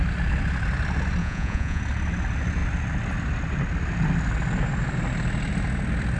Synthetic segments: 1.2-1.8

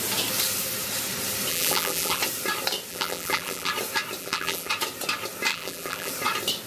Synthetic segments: 1.5-2.2; 2.9-3.7; 4.2-4.7; 5.5-6.1

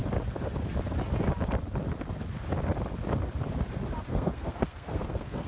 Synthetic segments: 4.1-5.5

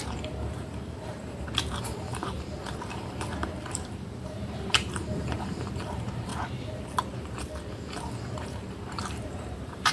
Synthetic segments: 0.0-6.3; 8.0-9.9

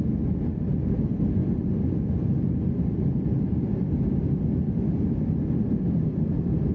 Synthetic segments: none

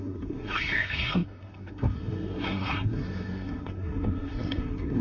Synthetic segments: 0.0-5.0

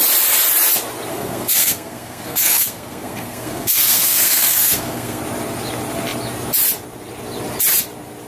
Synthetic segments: 1.1-5.2